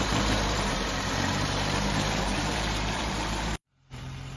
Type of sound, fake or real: fake